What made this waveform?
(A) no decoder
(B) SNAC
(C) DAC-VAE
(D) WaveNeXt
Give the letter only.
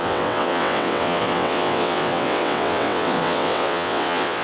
D